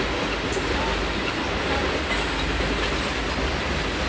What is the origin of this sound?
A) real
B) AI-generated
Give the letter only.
A